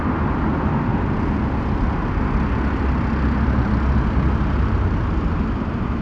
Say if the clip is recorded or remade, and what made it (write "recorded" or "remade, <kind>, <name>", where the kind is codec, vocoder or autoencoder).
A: recorded